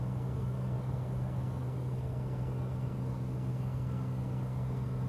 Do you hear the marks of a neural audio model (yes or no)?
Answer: yes